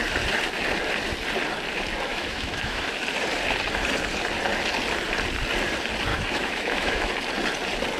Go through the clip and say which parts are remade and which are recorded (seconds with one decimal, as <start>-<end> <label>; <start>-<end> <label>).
0.0-2.1 recorded; 2.1-2.8 remade; 2.8-6.1 recorded; 6.1-7.1 remade; 7.1-8.0 recorded